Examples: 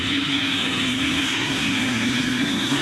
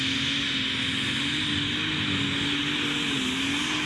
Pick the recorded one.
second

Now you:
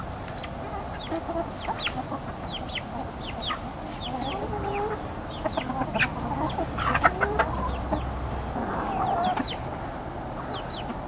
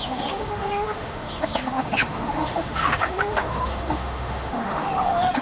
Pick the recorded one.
first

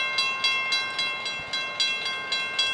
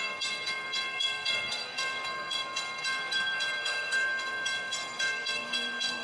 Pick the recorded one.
first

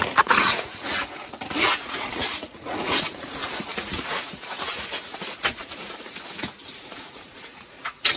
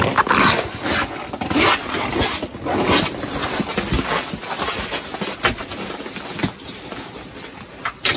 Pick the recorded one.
second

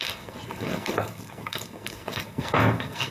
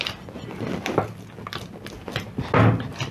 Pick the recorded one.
second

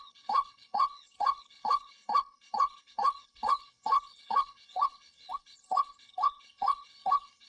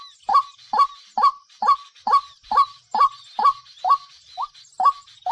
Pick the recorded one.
second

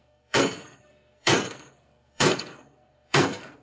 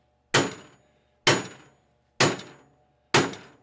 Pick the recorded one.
second